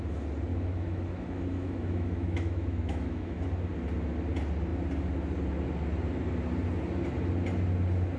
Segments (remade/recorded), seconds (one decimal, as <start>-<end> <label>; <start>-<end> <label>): 0.0-0.5 recorded; 0.5-3.4 remade; 3.4-8.2 recorded